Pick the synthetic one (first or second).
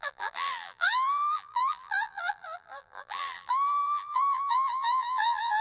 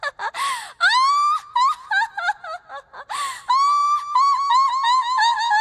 first